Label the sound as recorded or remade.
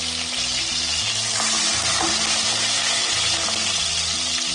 recorded